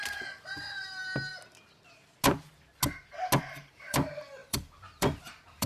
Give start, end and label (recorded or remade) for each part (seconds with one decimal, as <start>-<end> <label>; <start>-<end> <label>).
0.0-1.3 remade; 1.3-3.4 recorded; 3.4-5.7 remade